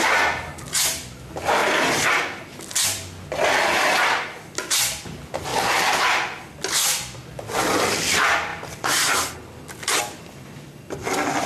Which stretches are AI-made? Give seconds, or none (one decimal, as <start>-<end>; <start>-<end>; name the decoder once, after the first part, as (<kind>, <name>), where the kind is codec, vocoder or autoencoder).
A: none